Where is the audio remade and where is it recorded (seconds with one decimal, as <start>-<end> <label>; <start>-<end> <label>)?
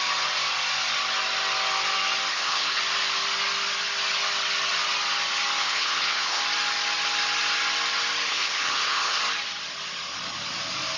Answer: 0.0-2.3 recorded; 2.3-2.8 remade; 2.8-5.6 recorded; 5.6-6.4 remade; 6.4-8.3 recorded; 8.3-9.2 remade; 9.2-11.0 recorded